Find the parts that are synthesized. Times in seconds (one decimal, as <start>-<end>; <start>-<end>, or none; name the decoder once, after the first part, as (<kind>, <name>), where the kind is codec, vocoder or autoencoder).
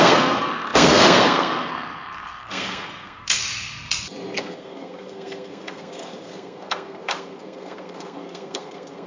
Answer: 0.0-3.4 (codec, SNAC); 4.4-9.1